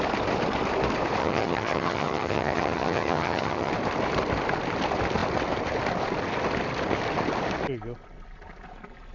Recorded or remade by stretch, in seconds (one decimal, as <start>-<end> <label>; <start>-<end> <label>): 0.0-1.2 recorded; 1.2-3.7 remade; 3.7-9.1 recorded